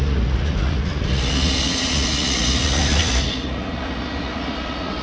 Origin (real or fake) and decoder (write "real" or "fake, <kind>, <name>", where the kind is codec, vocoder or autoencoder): fake, vocoder, Vocos